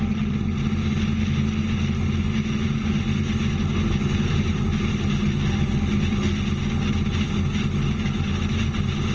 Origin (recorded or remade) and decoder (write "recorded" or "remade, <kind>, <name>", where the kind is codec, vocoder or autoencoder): recorded